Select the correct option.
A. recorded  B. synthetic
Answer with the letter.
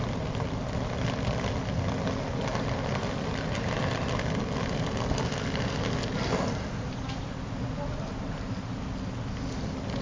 A